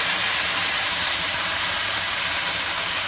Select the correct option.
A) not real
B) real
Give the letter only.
A